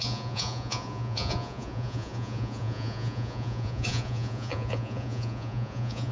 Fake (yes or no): yes